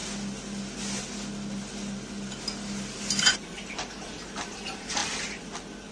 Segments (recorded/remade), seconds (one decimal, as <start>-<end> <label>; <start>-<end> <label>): 0.0-3.2 recorded; 3.2-5.0 remade; 5.0-5.9 recorded